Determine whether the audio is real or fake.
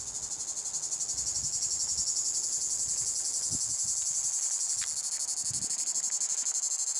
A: real